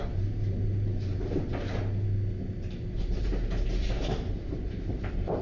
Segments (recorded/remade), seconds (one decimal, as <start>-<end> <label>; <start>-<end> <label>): 0.0-0.9 remade; 0.9-2.4 recorded; 2.4-5.4 remade